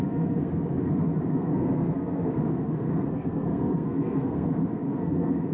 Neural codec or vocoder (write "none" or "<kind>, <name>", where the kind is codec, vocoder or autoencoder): codec, SNAC